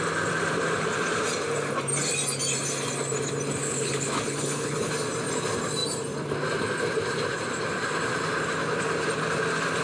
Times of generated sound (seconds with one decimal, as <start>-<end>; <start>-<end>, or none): 3.6-4.9